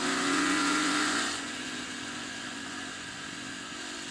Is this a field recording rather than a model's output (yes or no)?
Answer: no